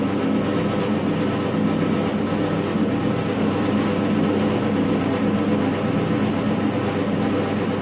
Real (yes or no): yes